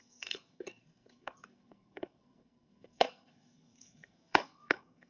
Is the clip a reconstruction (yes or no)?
yes